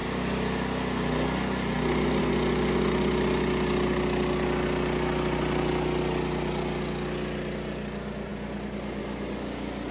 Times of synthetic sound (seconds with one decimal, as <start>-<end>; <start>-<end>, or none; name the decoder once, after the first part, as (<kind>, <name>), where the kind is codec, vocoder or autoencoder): none